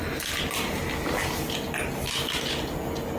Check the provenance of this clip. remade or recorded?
recorded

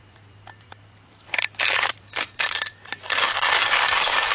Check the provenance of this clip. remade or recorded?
remade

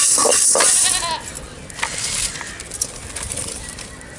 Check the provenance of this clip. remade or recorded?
recorded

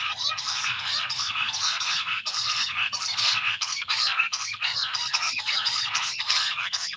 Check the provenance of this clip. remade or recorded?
remade